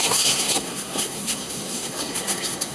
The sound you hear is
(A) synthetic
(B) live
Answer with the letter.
A